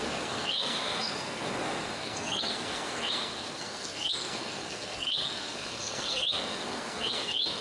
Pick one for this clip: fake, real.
fake